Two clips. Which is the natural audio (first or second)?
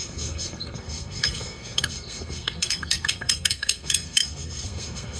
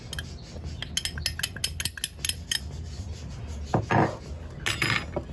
second